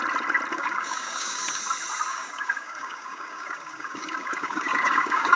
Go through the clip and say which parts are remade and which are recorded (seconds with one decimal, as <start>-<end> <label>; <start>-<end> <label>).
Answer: 0.0-0.5 recorded; 0.5-1.6 remade; 1.6-2.1 recorded; 2.1-5.4 remade